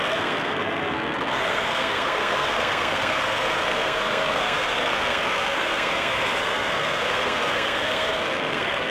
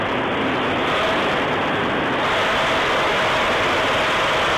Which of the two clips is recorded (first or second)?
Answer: second